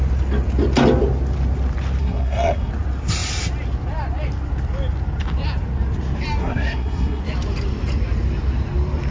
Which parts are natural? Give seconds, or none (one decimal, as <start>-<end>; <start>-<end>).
0.0-2.0; 2.7-6.4; 7.2-9.1